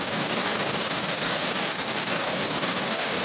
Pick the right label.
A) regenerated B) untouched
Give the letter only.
A